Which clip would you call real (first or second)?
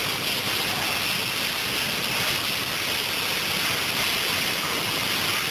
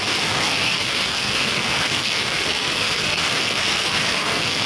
first